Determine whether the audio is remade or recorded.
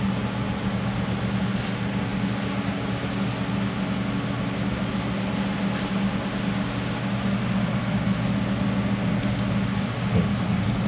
recorded